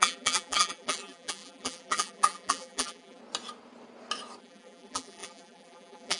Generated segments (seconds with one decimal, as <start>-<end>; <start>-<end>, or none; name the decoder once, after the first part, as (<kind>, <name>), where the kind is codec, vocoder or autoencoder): 0.0-3.2 (vocoder, BigVGAN v2); 4.4-6.2